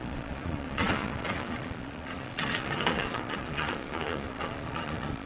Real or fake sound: fake